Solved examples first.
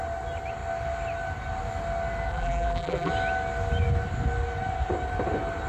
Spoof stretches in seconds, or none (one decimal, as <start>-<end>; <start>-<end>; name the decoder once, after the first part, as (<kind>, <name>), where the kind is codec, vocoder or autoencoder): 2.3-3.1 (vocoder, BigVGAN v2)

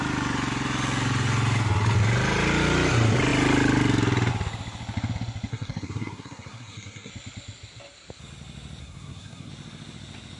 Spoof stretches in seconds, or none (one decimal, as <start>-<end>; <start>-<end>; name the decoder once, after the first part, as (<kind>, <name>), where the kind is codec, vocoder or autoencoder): 5.5-7.1 (codec, SNAC); 8.8-9.5

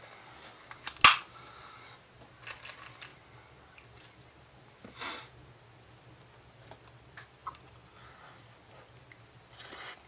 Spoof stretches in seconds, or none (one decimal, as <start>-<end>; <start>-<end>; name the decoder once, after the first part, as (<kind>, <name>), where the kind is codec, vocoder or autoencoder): none

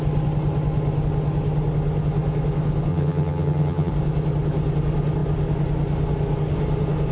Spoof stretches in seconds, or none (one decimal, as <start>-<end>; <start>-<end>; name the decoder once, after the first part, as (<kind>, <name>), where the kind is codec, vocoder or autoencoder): 2.9-3.9 (vocoder, HiFi-GAN)

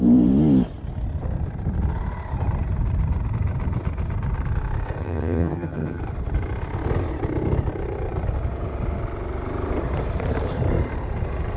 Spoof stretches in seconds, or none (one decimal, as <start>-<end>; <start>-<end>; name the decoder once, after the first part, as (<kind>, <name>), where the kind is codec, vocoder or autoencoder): 5.0-6.0 (vocoder, HiFi-GAN)

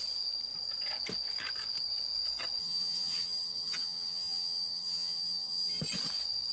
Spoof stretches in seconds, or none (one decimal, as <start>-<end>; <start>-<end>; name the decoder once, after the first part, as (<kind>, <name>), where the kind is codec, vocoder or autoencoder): 2.6-5.8 (vocoder, HiFi-GAN)

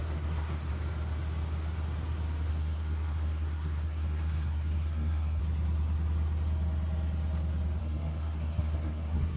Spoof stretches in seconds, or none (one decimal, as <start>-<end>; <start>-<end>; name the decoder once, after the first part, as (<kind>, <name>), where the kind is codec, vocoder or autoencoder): 0.0-0.7 (codec, SNAC); 2.5-5.4; 7.8-9.4